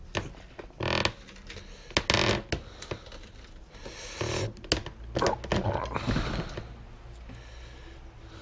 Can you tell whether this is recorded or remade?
recorded